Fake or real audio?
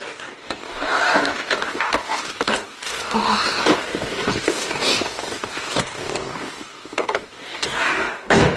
fake